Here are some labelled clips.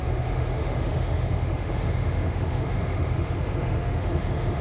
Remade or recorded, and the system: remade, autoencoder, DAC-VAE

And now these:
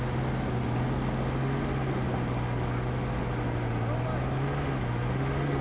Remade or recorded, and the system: recorded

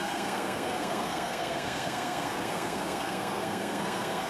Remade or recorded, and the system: remade, codec, SNAC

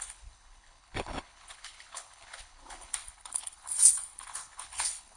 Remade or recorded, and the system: remade, codec, HILCodec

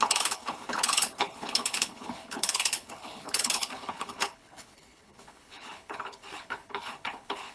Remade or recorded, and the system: remade, codec, HILCodec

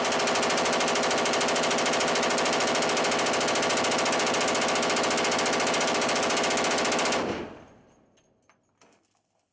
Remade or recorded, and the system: recorded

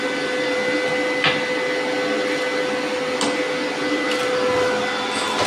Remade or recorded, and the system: recorded